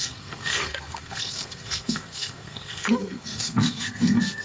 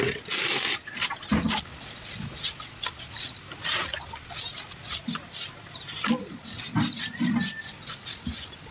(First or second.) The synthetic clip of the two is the first